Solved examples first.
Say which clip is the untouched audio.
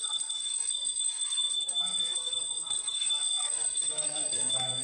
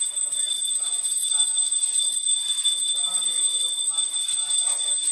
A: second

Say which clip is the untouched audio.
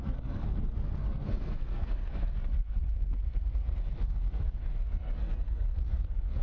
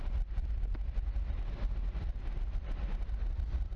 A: second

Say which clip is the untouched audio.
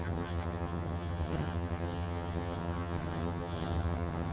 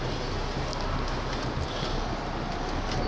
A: second